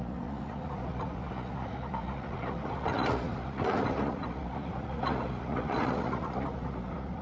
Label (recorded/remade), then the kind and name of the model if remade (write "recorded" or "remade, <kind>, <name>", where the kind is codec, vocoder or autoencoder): remade, vocoder, Vocos